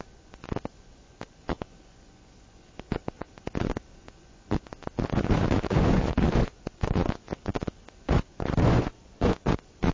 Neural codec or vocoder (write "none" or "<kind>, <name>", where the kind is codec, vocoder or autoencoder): vocoder, Vocos